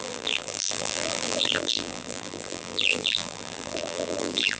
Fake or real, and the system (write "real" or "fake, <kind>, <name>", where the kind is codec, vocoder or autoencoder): fake, vocoder, BigVGAN v2